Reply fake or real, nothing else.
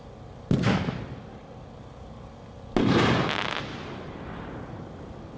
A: real